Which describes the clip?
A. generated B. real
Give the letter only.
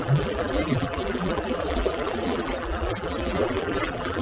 A